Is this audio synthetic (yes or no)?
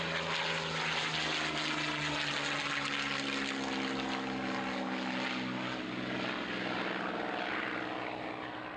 no